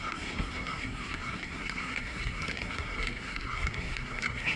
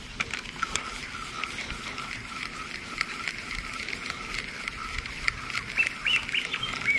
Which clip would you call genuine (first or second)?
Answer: second